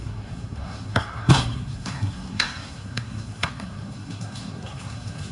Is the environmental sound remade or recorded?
remade